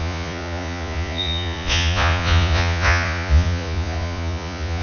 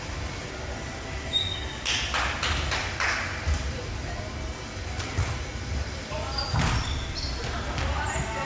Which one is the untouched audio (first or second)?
second